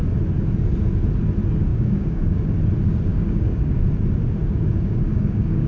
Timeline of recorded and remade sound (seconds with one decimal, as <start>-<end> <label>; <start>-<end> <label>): 0.0-1.7 recorded; 1.7-2.5 remade; 2.5-3.1 recorded; 3.1-3.9 remade; 3.9-4.4 recorded; 4.4-5.7 remade